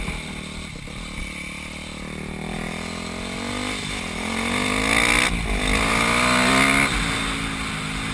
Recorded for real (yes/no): yes